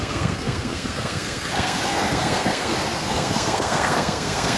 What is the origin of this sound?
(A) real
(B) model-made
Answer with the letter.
B